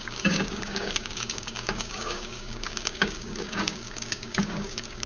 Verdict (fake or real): fake